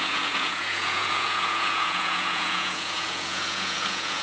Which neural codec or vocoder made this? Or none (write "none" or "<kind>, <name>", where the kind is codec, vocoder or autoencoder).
vocoder, Vocos